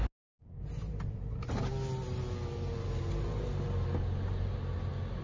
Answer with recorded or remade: recorded